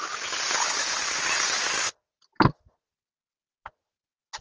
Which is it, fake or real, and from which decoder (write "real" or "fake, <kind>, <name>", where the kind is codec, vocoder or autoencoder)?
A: real